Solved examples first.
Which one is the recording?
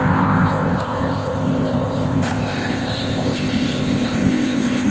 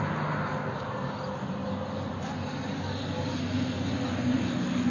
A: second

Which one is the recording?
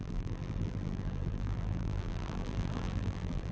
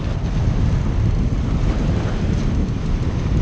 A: second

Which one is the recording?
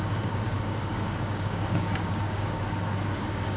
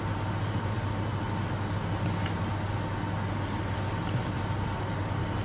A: second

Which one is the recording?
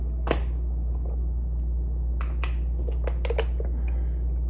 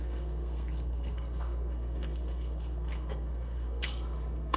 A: first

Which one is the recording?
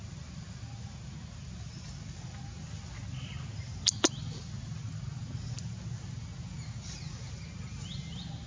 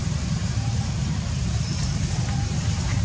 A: first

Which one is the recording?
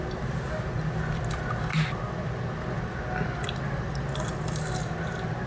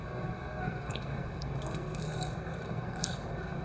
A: first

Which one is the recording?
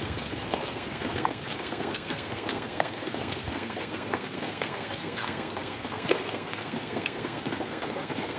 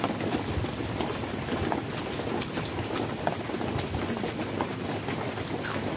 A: second